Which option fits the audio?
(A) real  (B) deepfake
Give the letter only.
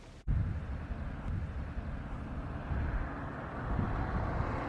A